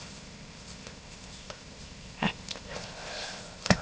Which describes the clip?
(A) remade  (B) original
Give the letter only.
A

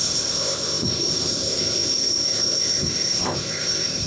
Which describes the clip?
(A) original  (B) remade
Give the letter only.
B